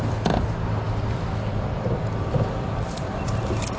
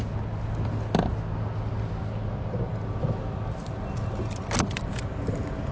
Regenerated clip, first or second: first